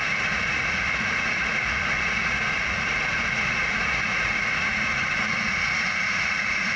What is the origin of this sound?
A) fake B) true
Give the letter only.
A